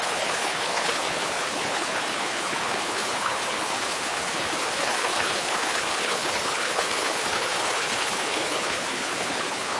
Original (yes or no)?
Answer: no